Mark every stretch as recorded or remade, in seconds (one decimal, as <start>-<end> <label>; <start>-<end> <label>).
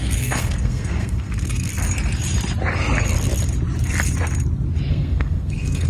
0.0-1.7 remade; 1.7-4.9 recorded; 4.9-5.9 remade